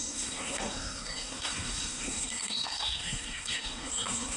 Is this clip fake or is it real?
fake